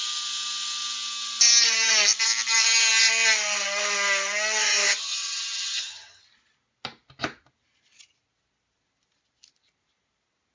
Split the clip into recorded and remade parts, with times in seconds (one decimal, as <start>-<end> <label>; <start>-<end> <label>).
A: 0.0-4.6 recorded; 4.6-6.2 remade; 6.2-10.5 recorded